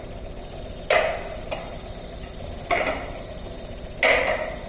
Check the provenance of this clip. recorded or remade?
recorded